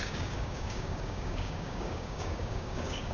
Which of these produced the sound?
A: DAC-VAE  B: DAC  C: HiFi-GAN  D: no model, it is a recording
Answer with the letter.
B